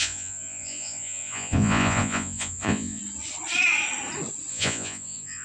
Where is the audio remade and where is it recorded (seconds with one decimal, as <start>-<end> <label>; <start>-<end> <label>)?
0.0-3.0 remade; 3.0-4.5 recorded; 4.5-5.4 remade